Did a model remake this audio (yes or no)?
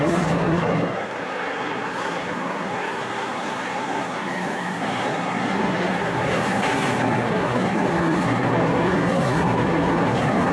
yes